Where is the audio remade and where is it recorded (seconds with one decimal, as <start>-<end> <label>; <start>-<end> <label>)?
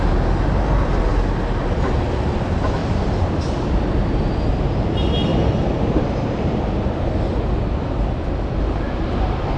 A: 0.0-2.8 recorded; 2.8-4.5 remade; 4.5-5.3 recorded; 5.3-7.1 remade; 7.1-9.6 recorded